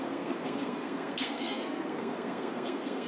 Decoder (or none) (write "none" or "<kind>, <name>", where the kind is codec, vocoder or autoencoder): codec, SNAC